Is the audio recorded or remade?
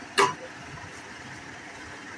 recorded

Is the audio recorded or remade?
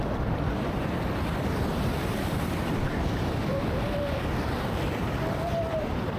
remade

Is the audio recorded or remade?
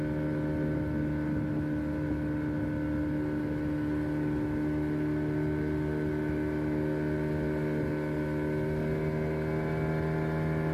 recorded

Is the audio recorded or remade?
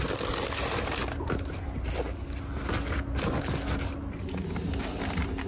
recorded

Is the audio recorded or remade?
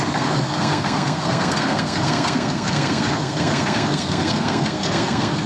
remade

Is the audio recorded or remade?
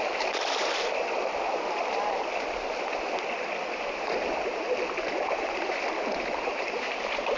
recorded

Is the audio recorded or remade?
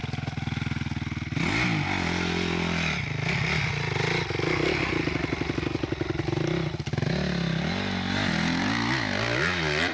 recorded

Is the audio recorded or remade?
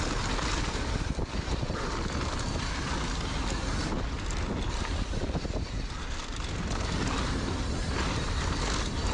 recorded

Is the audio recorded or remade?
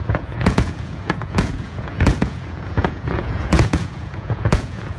remade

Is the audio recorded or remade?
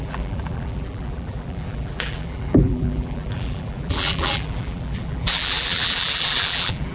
remade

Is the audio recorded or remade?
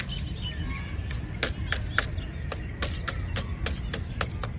recorded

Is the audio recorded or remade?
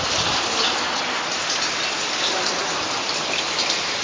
recorded